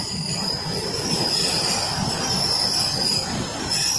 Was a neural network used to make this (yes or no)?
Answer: no